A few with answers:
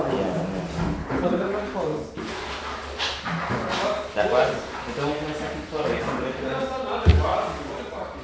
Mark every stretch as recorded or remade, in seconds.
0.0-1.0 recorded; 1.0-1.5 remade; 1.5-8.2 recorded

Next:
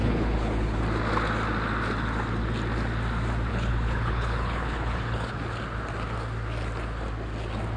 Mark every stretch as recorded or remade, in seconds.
0.0-0.8 remade; 0.8-3.5 recorded; 3.5-5.3 remade; 5.3-7.8 recorded

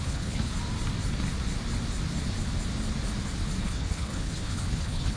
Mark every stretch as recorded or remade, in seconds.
0.0-0.5 remade; 0.5-3.6 recorded; 3.6-5.2 remade

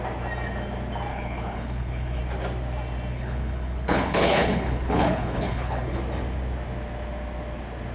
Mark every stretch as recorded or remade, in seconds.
0.0-1.1 recorded; 1.1-2.2 remade; 2.2-3.1 recorded; 3.1-6.0 remade; 6.0-7.9 recorded

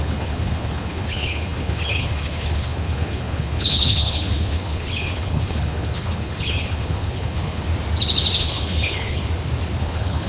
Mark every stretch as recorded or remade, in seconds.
0.0-7.7 remade; 7.7-8.4 recorded; 8.4-9.2 remade; 9.2-9.8 recorded; 9.8-10.3 remade